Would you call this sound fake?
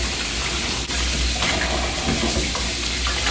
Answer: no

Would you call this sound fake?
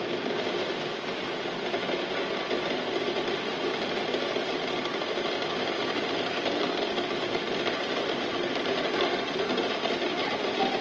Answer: no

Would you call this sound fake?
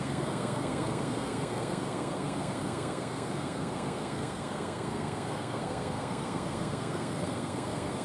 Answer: yes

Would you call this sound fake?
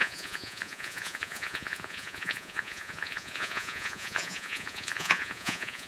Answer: yes